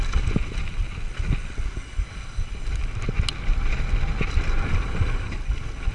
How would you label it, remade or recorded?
recorded